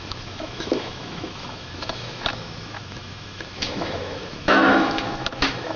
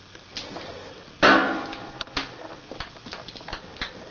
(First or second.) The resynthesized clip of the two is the first